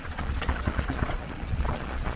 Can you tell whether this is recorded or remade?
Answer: remade